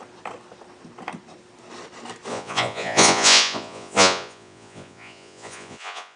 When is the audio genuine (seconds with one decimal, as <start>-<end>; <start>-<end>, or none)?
0.0-2.3